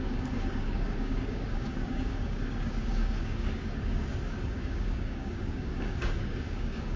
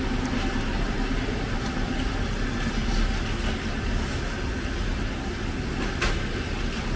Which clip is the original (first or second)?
second